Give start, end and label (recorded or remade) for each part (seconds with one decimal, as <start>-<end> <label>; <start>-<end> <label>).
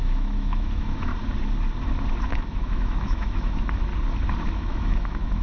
0.0-1.1 remade; 1.1-2.2 recorded; 2.2-3.9 remade; 3.9-4.5 recorded; 4.5-5.4 remade